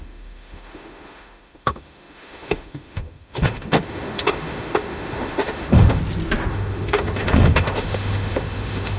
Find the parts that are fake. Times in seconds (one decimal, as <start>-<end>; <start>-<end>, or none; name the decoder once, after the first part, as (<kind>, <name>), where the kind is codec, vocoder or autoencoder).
0.0-6.0 (autoencoder, DAC-VAE); 6.5-9.0